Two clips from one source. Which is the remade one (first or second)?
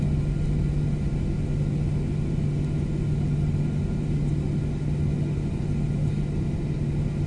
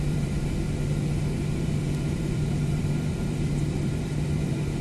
second